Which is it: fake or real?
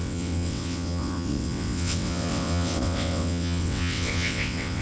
fake